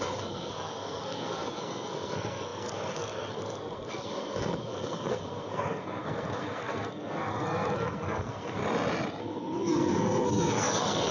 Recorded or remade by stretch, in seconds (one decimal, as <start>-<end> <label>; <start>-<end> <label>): 0.0-8.6 remade; 8.6-9.2 recorded; 9.2-11.1 remade